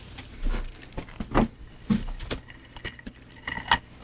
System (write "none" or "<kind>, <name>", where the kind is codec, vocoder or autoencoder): none